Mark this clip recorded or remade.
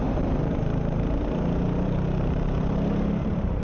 remade